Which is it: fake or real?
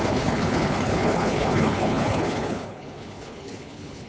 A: fake